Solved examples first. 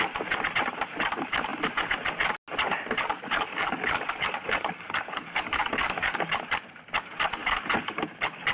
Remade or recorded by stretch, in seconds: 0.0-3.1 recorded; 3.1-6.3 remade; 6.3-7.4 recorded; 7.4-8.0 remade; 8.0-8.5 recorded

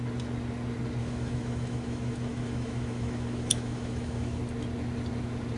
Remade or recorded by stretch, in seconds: 0.0-1.0 recorded; 1.0-4.4 remade; 4.4-5.6 recorded

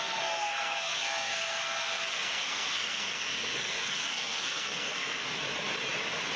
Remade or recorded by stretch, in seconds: 0.0-5.2 remade; 5.2-6.4 recorded

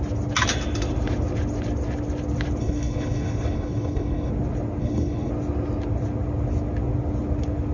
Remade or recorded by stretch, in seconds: 0.0-2.6 recorded; 2.6-4.3 remade; 4.3-4.8 recorded; 4.8-5.3 remade; 5.3-7.7 recorded

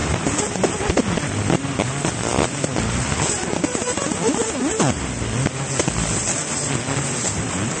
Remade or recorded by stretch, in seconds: 0.0-7.8 recorded

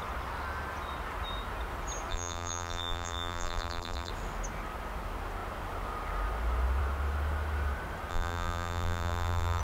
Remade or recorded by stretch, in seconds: 0.0-2.1 recorded; 2.1-4.1 remade; 4.1-8.1 recorded; 8.1-9.6 remade